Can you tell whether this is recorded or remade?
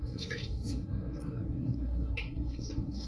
remade